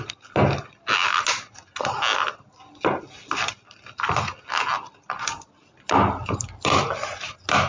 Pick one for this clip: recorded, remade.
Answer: recorded